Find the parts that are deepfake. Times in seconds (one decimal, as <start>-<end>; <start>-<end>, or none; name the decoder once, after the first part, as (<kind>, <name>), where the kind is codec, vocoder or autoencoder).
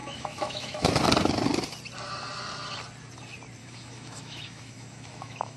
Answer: 0.0-0.9 (autoencoder, DAC-VAE); 3.6-5.6